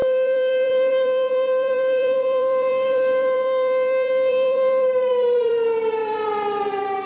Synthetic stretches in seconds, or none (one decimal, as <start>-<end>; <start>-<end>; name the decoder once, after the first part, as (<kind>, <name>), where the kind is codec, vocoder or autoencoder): 0.0-7.1 (vocoder, BigVGAN v2)